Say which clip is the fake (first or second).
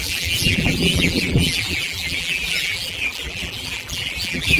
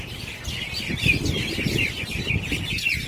first